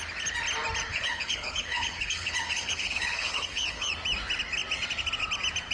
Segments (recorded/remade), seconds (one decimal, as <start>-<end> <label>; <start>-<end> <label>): 0.0-0.9 recorded; 0.9-3.9 remade; 3.9-5.7 recorded